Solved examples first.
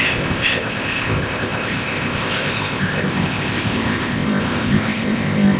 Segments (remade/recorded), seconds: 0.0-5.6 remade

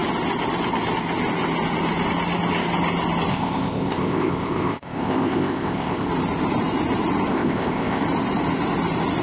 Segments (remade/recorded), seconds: 0.0-3.3 recorded; 3.3-6.1 remade; 6.1-7.3 recorded; 7.3-8.0 remade; 8.0-9.2 recorded

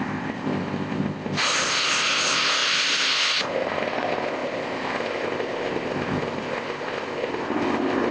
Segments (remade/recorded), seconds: 0.0-8.1 remade

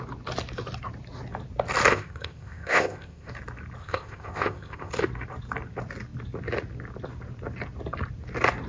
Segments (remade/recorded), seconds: 0.0-1.9 recorded; 1.9-3.3 remade; 3.3-3.8 recorded; 3.8-4.9 remade; 4.9-8.7 recorded

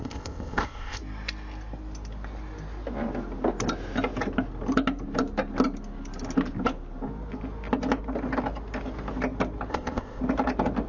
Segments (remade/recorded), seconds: 0.0-1.0 remade; 1.0-9.7 recorded; 9.7-10.2 remade; 10.2-10.9 recorded